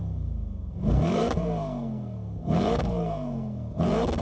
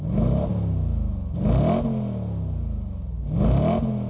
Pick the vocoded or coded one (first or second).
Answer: first